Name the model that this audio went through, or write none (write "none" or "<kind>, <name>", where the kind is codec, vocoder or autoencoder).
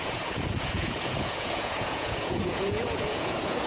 vocoder, Vocos